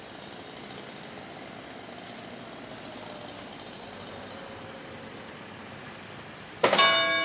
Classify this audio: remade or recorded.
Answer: recorded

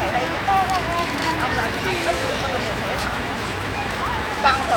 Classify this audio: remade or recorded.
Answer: remade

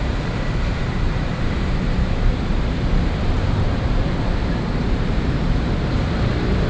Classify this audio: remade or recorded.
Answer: remade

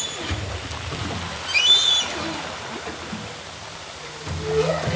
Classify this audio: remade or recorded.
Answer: recorded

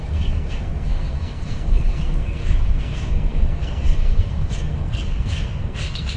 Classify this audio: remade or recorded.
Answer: remade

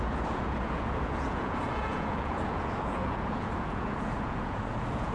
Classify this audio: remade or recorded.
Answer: remade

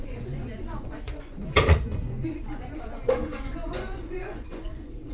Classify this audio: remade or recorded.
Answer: remade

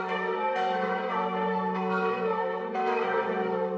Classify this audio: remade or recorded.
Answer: remade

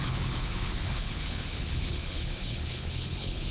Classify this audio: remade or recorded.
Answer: remade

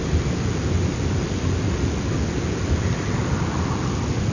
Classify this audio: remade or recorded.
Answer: recorded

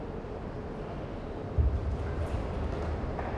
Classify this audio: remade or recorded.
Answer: recorded